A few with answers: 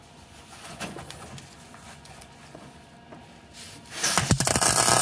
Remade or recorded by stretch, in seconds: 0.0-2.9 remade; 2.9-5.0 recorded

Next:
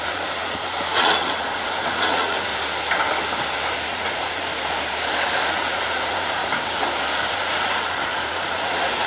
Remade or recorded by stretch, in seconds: 0.0-2.5 remade; 2.5-3.9 recorded; 3.9-4.5 remade; 4.5-5.5 recorded; 5.5-6.4 remade; 6.4-7.3 recorded; 7.3-9.1 remade